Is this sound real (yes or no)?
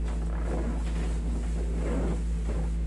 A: yes